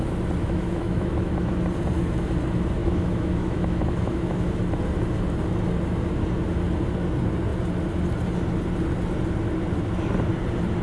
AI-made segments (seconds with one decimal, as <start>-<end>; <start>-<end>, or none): 0.4-1.6; 2.8-4.5